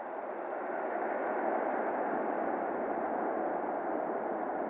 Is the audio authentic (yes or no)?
yes